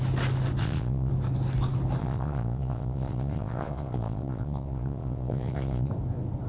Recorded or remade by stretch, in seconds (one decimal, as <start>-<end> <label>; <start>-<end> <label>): 0.0-0.6 recorded; 0.6-1.1 remade; 1.1-2.0 recorded; 2.0-5.9 remade; 5.9-6.5 recorded